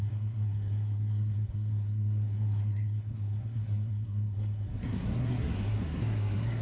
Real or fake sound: fake